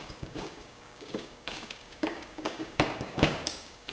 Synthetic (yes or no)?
yes